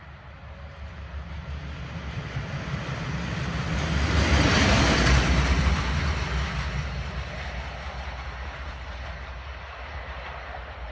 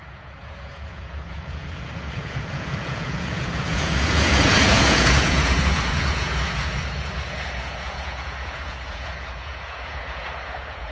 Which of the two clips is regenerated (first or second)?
second